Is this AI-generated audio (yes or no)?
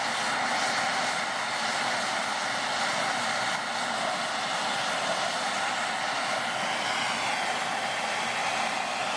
no